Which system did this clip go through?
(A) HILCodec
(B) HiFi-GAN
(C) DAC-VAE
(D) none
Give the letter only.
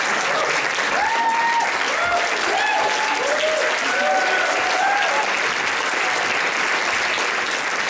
D